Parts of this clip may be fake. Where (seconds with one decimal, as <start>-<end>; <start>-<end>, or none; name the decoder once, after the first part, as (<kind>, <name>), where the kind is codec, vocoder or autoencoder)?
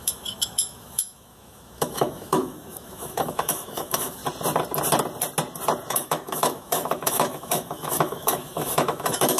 0.0-4.2 (autoencoder, DAC-VAE); 5.9-9.4